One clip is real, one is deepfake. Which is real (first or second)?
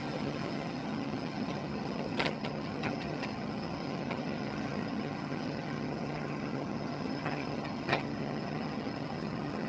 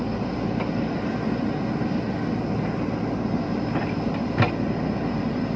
second